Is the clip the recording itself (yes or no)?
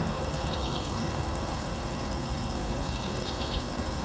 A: no